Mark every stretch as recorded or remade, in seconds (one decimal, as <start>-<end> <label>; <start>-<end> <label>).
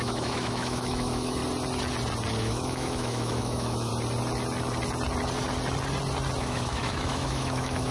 0.0-1.4 remade; 1.4-2.4 recorded; 2.4-3.9 remade; 3.9-6.4 recorded; 6.4-7.9 remade